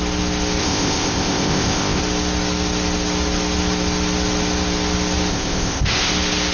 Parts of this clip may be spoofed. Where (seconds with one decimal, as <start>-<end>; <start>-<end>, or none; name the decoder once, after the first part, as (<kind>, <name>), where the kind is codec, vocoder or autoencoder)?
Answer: 0.6-2.0 (codec, ZipCodec); 5.3-6.1